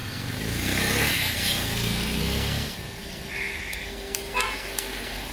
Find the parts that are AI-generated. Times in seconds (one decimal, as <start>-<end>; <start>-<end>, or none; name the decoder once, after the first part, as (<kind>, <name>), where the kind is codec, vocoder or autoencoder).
0.0-5.3 (codec, SNAC)